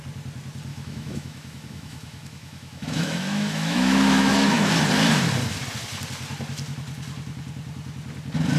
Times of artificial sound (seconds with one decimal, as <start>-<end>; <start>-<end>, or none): 0.7-4.7